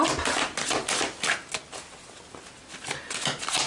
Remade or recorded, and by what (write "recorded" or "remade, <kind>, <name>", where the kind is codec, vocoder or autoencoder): recorded